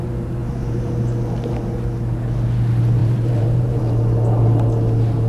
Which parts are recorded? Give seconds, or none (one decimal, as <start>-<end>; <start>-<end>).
0.0-0.4; 0.9-3.0; 3.8-5.3